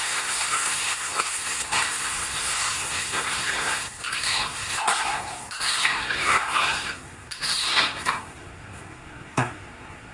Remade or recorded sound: remade